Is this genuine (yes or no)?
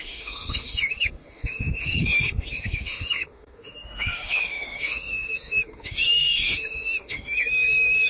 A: no